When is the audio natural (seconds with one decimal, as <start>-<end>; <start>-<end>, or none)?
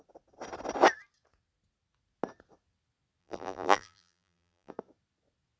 0.0-3.2; 4.7-5.6